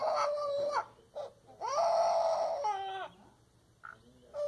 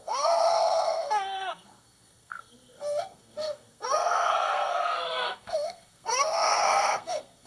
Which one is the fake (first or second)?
second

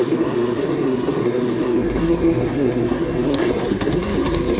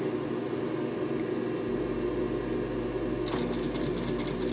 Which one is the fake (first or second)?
first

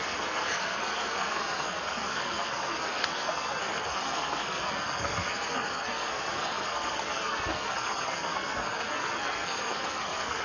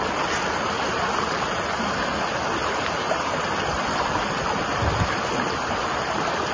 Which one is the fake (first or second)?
first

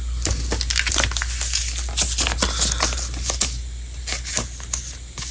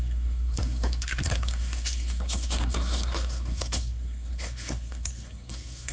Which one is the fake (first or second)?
second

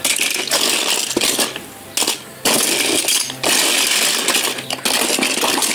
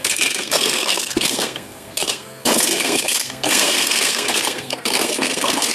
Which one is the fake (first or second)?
second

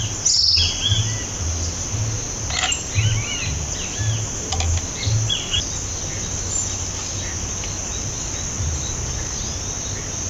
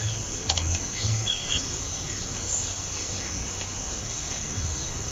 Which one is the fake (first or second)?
second